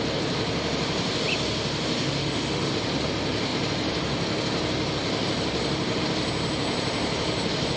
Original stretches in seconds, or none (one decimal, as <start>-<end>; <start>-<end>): 0.0-2.2; 2.7-7.8